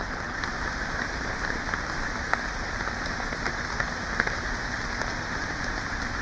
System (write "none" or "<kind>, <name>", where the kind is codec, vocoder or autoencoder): none